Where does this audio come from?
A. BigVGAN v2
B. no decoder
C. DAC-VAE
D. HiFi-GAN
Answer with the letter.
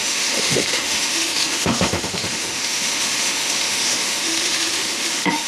C